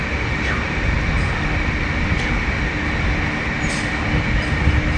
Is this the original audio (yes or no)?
yes